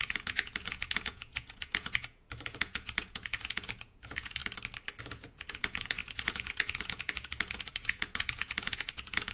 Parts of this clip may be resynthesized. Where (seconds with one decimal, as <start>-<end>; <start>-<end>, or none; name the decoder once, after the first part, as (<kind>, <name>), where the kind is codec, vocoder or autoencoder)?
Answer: 0.0-4.4 (vocoder, Vocos); 5.0-9.3

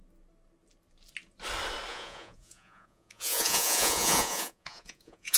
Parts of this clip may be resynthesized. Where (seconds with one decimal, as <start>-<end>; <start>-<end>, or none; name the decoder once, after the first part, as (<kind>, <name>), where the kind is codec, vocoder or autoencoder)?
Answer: 1.9-5.4 (vocoder, Vocos)